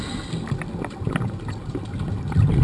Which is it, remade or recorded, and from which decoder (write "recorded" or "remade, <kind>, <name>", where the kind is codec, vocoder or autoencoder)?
recorded